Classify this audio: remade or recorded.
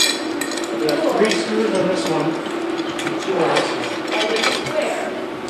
recorded